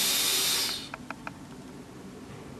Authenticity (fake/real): real